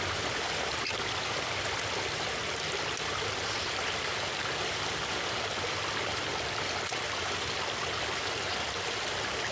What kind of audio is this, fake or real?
real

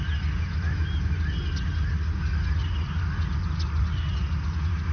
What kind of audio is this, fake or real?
real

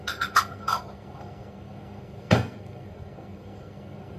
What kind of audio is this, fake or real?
fake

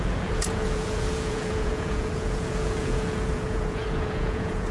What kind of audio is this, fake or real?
fake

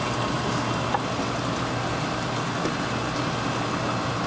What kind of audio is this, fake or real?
real